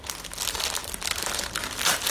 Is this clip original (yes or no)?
yes